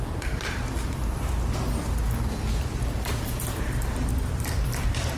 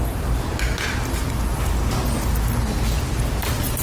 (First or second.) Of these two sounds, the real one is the second